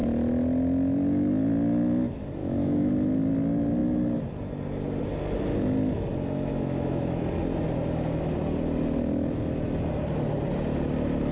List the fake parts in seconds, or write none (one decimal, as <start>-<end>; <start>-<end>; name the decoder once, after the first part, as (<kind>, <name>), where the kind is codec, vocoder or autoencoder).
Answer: 2.4-2.9 (autoencoder, DAC-VAE); 6.5-7.2